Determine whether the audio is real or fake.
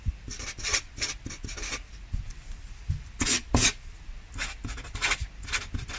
real